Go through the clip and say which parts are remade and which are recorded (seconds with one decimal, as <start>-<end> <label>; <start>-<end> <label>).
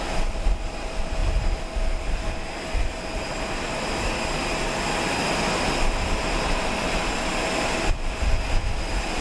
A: 0.0-9.2 recorded